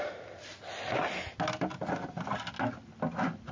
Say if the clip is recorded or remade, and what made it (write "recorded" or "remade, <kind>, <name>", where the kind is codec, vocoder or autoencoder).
recorded